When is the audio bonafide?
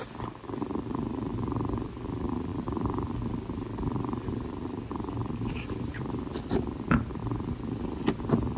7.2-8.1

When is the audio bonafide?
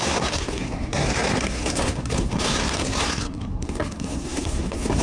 none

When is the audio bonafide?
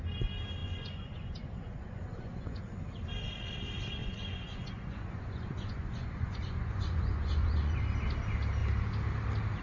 0.0-0.6; 2.6-4.0; 7.8-9.6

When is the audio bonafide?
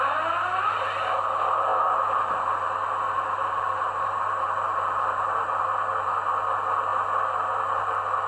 0.0-8.3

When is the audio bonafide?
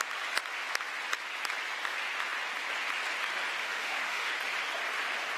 0.0-3.6; 4.3-5.4